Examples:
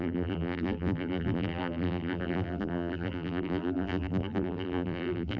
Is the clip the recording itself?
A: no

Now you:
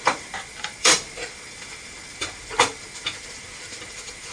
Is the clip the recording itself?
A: no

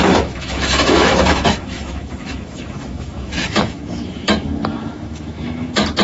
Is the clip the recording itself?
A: no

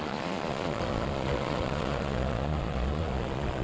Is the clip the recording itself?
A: no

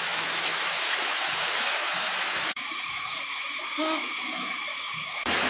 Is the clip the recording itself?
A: no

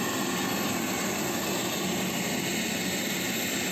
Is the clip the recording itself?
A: yes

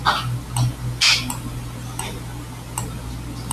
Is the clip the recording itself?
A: yes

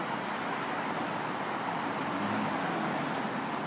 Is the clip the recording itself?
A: yes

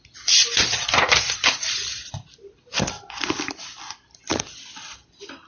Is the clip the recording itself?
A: no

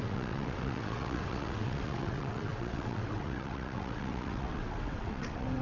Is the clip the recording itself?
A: no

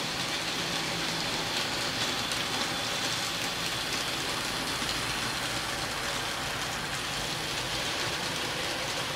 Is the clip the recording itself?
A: yes